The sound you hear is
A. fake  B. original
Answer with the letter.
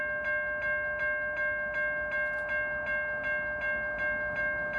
B